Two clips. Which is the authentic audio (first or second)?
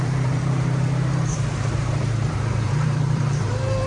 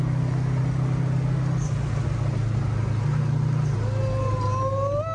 second